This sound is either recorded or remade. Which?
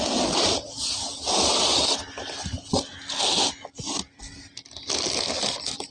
recorded